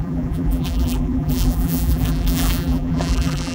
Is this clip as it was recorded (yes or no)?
no